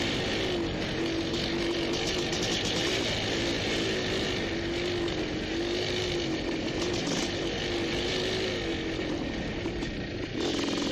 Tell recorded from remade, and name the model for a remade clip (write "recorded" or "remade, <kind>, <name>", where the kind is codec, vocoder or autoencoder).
recorded